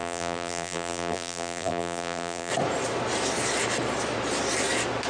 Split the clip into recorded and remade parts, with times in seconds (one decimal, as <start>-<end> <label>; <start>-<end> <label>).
0.0-2.5 remade; 2.5-5.1 recorded